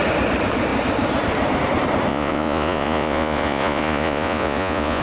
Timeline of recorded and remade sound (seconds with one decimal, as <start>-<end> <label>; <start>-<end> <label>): 0.0-2.1 recorded; 2.1-5.0 remade